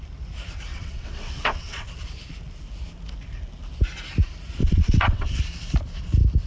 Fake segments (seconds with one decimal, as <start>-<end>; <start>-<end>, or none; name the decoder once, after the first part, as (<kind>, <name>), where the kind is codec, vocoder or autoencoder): 0.7-1.9 (vocoder, WaveNeXt); 4.6-5.4